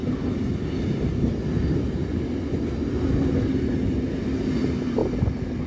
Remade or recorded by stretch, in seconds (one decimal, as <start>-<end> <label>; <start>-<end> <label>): 0.0-5.7 recorded